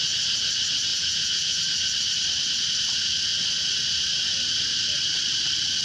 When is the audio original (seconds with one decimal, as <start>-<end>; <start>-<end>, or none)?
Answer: 0.0-0.9; 1.6-5.8

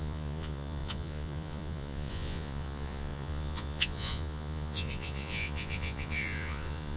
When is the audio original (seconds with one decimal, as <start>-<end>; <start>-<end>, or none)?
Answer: none

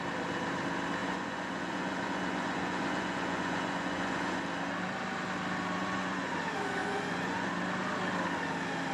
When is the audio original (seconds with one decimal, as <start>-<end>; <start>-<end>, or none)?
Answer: 0.0-1.0; 4.4-5.8; 6.3-6.8; 7.5-8.9